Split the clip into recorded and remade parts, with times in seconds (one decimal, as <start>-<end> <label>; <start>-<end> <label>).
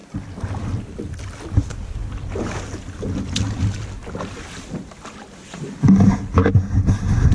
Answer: 0.0-7.3 recorded